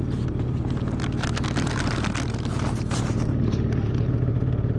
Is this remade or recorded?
recorded